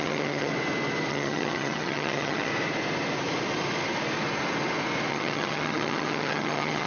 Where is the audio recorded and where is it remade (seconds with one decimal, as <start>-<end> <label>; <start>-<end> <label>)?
0.0-0.5 remade; 0.5-1.1 recorded; 1.1-2.5 remade; 2.5-5.1 recorded; 5.1-6.9 remade